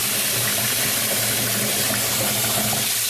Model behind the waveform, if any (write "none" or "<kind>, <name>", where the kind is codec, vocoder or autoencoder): none